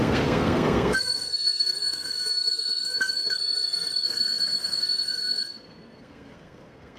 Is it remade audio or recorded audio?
remade